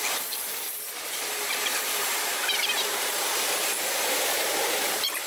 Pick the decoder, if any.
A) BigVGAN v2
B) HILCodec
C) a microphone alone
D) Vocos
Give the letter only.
A